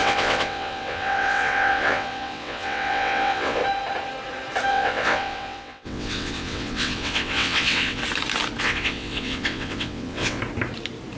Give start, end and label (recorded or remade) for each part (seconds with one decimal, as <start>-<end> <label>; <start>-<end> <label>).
0.0-3.6 remade; 3.6-4.7 recorded; 4.7-8.0 remade; 8.0-8.6 recorded; 8.6-10.4 remade; 10.4-11.2 recorded